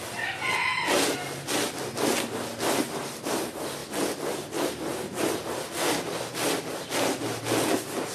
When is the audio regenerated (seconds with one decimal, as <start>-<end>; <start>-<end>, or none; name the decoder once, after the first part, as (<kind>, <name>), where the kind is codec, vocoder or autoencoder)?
none